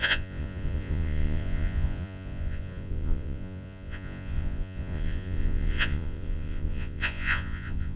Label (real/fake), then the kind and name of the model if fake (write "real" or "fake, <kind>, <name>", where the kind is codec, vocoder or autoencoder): fake, vocoder, Vocos